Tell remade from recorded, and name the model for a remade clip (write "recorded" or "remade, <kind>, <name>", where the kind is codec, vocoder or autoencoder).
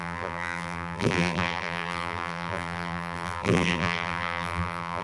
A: remade, vocoder, BigVGAN v2